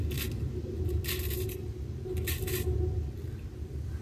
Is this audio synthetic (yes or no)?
no